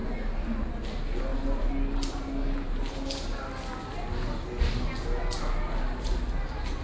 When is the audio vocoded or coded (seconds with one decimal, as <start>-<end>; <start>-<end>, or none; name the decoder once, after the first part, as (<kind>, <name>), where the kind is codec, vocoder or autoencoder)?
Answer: none